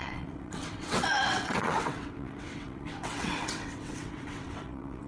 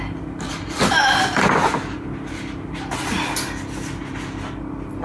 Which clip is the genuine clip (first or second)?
second